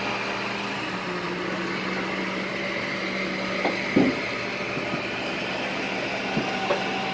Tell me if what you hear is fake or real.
real